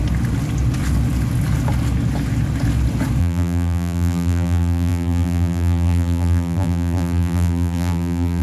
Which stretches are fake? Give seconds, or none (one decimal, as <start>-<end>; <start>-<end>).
3.2-8.4